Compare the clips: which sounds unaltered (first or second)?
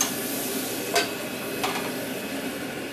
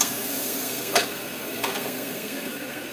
first